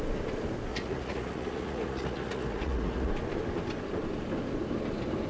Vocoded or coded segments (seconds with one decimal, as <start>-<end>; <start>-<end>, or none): 0.7-3.1